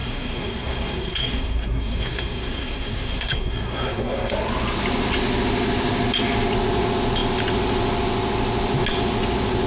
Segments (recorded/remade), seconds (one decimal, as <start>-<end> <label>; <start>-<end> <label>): 0.0-4.3 remade; 4.3-9.7 recorded